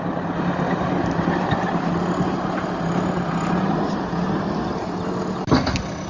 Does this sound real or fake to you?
real